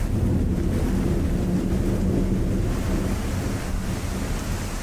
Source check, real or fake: real